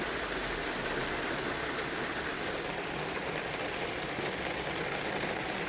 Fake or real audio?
real